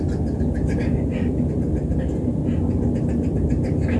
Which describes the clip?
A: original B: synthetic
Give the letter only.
A